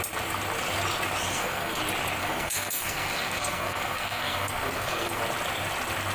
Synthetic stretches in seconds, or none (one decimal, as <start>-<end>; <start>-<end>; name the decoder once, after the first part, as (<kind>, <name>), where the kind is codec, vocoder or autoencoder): 1.3-1.8 (codec, SNAC); 2.2-5.2